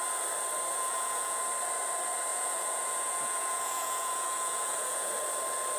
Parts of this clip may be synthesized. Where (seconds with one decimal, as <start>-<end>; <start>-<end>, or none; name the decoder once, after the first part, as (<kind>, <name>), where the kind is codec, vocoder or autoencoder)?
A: 0.7-1.4 (vocoder, Vocos); 2.3-5.1